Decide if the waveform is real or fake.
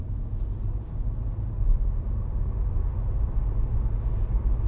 real